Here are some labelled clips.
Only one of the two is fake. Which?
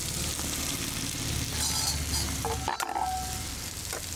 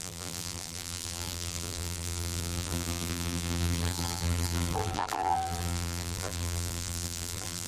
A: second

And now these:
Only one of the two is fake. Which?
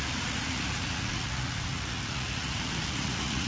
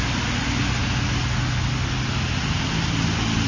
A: first